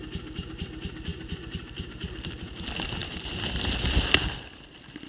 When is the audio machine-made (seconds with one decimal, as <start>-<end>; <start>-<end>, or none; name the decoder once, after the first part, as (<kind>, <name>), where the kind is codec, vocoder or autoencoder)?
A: 1.1-2.3 (vocoder, BigVGAN v2); 3.0-5.1